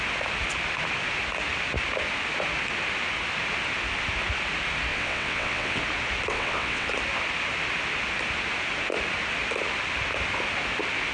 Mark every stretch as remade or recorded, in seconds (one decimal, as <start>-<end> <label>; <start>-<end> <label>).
0.0-4.9 recorded; 4.9-5.8 remade; 5.8-6.3 recorded; 6.3-6.9 remade; 6.9-11.1 recorded